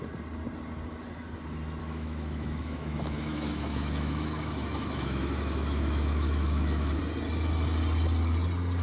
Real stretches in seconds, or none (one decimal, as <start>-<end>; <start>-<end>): 0.0-1.8; 7.0-8.8